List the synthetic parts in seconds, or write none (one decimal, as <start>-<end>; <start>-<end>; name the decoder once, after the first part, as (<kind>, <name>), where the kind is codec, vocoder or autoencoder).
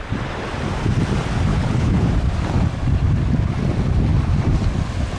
1.5-2.1 (codec, HILCodec)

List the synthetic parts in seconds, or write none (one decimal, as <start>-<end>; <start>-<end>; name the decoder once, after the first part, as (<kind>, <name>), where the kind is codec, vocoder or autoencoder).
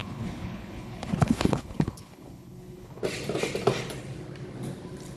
0.0-3.0 (codec, HILCodec)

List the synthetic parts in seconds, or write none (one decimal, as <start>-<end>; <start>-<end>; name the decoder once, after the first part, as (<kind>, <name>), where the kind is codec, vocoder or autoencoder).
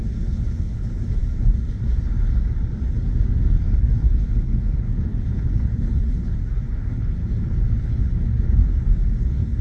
0.0-1.2 (codec, HILCodec); 3.5-7.2; 7.8-8.6; 9.2-9.6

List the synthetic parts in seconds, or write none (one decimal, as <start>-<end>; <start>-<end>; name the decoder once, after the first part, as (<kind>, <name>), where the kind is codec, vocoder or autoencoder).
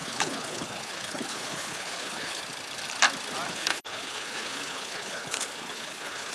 0.0-2.4 (codec, HILCodec); 3.5-6.3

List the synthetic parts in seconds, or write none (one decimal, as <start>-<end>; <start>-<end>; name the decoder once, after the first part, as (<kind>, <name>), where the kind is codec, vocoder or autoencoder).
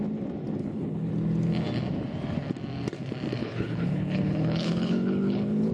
0.6-1.1 (codec, HILCodec); 3.4-5.7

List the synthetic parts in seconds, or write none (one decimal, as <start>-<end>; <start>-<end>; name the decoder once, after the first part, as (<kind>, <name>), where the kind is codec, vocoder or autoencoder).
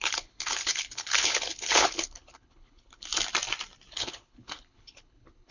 0.0-3.1 (codec, HILCodec); 3.9-5.5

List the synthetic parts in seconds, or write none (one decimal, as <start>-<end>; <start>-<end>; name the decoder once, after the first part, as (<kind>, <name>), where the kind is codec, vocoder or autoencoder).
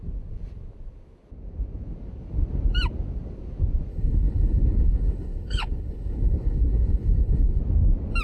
3.9-7.6 (codec, HILCodec)